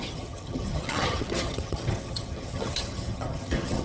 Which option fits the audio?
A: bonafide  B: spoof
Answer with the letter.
B